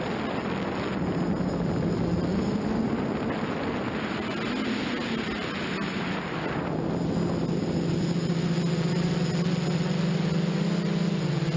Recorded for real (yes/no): yes